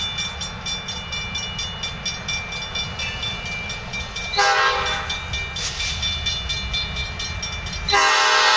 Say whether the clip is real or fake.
real